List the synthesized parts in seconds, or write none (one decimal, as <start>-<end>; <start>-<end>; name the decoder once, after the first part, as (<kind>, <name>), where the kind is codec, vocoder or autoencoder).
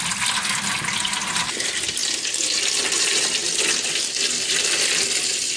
none